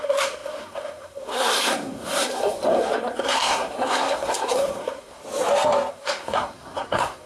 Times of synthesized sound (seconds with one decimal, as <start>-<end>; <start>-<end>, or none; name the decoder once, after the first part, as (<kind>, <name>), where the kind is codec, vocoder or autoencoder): 0.0-5.2 (codec, SNAC); 5.9-7.3